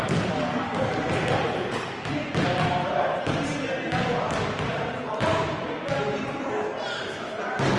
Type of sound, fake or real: real